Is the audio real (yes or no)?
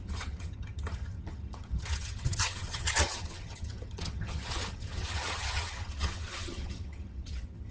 no